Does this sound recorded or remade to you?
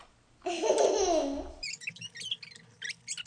recorded